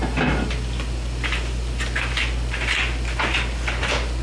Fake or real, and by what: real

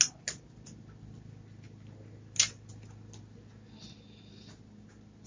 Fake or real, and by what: real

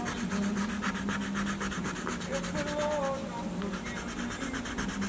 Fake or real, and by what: real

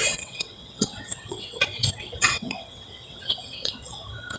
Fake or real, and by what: fake, vocoder, WaveNeXt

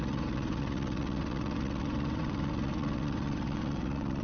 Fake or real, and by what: fake, vocoder, WaveNeXt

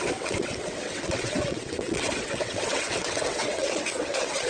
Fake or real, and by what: fake, vocoder, WaveNeXt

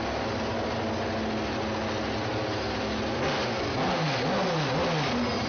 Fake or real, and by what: real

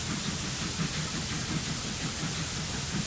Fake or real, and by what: real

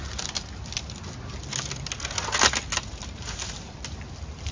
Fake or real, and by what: real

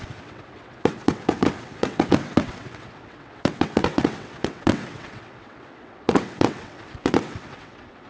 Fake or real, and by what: fake, vocoder, WaveNeXt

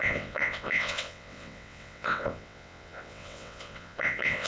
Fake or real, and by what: fake, vocoder, WaveNeXt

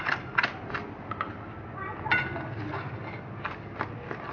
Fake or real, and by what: real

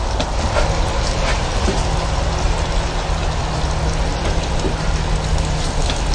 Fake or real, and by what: real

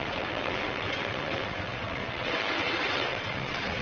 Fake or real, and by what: fake, vocoder, WaveNeXt